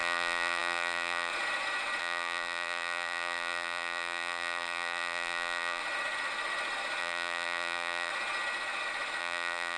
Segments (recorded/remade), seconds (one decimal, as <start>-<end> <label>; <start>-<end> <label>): 0.0-1.3 remade; 1.3-2.0 recorded; 2.0-5.8 remade; 5.8-7.0 recorded; 7.0-8.1 remade; 8.1-9.2 recorded; 9.2-9.8 remade

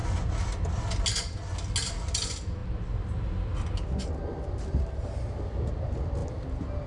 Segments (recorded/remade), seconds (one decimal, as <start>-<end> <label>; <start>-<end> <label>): 0.0-6.9 recorded

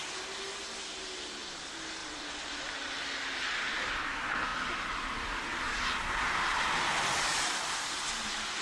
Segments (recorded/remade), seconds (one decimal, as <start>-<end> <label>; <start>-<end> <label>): 0.0-7.3 recorded; 7.3-8.2 remade; 8.2-8.6 recorded

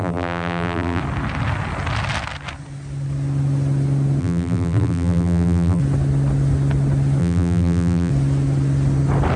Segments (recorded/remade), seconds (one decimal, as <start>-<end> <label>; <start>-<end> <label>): 0.0-1.0 remade; 1.0-4.2 recorded; 4.2-5.8 remade; 5.8-7.2 recorded; 7.2-8.1 remade; 8.1-9.4 recorded

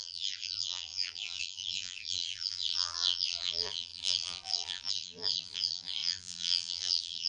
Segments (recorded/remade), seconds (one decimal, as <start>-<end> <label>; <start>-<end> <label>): 0.0-7.3 remade

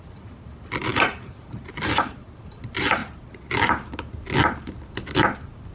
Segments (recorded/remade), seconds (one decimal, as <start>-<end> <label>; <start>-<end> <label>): 0.0-3.0 remade; 3.0-4.9 recorded; 4.9-5.7 remade

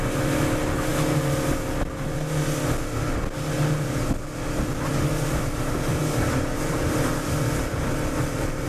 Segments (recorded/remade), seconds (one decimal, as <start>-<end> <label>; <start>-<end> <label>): 0.0-5.9 recorded; 5.9-8.7 remade